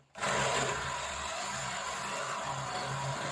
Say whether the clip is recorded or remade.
recorded